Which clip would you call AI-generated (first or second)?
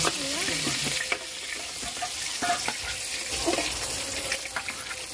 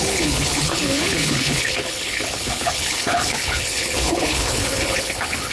second